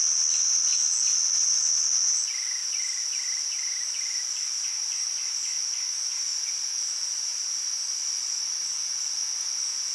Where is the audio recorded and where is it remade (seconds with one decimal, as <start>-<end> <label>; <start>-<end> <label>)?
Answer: 0.0-2.6 recorded; 2.6-6.2 remade; 6.2-9.9 recorded